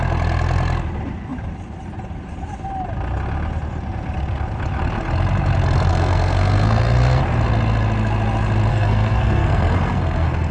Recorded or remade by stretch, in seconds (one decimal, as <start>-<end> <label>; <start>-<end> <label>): 0.0-5.9 recorded; 5.9-7.2 remade; 7.2-8.7 recorded; 8.7-10.5 remade